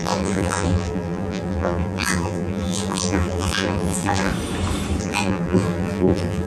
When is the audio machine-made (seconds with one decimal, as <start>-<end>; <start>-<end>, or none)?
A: 0.0-4.3; 5.0-6.5